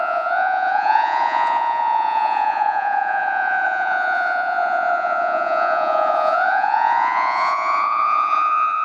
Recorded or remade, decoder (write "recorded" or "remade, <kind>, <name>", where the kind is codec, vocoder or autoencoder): remade, vocoder, Vocos